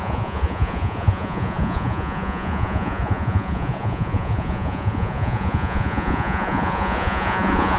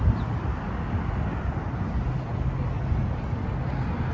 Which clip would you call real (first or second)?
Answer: second